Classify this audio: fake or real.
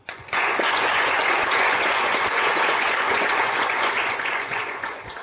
fake